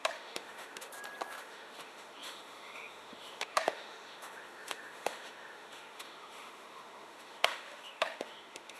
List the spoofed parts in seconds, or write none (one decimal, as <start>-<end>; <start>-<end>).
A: 0.0-0.9; 1.4-8.8